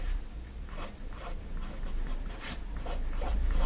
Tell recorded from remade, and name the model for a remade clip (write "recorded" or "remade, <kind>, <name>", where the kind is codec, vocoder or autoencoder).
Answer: remade, vocoder, BigVGAN v2